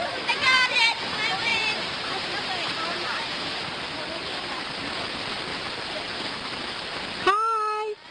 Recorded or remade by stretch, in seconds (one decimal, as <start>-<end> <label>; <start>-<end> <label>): 0.0-1.5 recorded; 1.5-4.9 remade; 4.9-5.5 recorded; 5.5-6.1 remade; 6.1-8.1 recorded